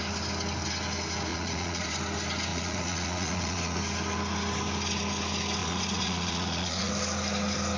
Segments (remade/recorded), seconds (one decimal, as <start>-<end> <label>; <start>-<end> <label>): 0.0-1.3 recorded; 1.3-1.9 remade; 1.9-2.5 recorded; 2.5-3.8 remade; 3.8-5.6 recorded; 5.6-6.9 remade; 6.9-7.8 recorded